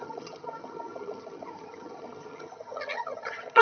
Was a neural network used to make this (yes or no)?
yes